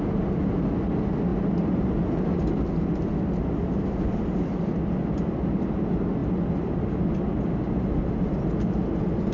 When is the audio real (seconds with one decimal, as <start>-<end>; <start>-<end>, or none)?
0.0-9.3